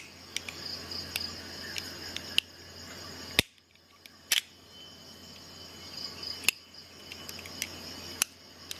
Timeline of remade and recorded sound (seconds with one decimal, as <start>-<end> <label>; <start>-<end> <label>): 0.0-8.8 recorded